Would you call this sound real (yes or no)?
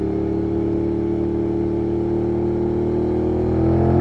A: yes